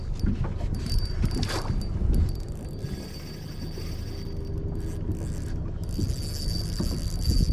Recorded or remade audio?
recorded